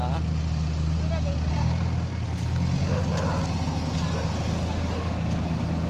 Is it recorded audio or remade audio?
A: recorded